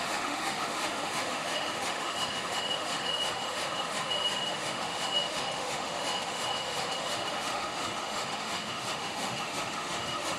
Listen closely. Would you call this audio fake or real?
fake